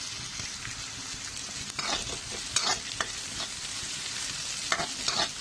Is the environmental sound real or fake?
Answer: real